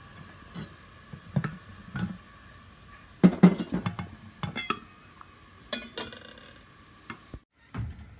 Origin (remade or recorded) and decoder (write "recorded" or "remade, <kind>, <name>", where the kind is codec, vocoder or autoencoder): recorded